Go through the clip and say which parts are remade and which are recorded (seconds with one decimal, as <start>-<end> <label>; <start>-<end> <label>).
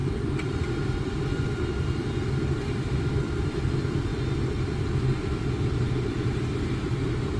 0.0-4.1 remade; 4.1-4.8 recorded; 4.8-7.4 remade